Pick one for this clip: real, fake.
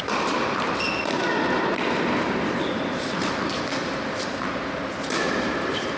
fake